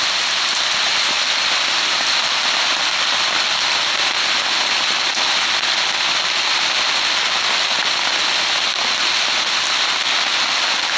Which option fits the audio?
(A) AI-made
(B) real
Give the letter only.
B